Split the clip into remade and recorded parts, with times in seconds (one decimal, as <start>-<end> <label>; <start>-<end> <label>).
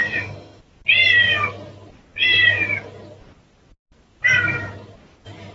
0.0-0.6 remade; 0.6-5.5 recorded